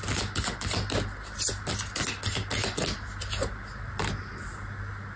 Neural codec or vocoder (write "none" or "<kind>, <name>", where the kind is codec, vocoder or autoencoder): none